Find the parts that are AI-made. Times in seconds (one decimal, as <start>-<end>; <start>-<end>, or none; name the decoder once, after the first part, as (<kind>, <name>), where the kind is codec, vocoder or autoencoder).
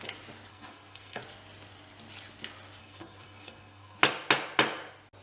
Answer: 0.5-1.2 (codec, SNAC); 2.8-4.0